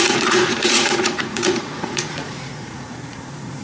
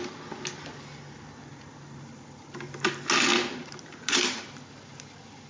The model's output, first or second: first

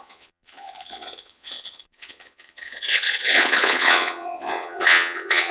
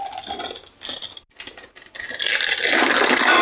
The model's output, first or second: first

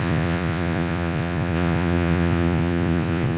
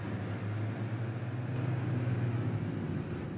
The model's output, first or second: first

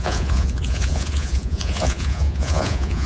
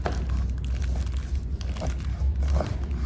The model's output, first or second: first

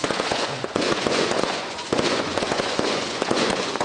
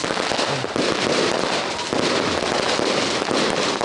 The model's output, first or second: first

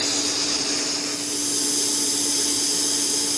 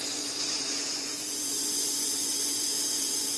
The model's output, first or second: second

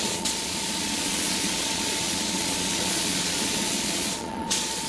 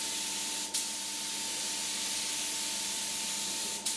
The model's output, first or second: first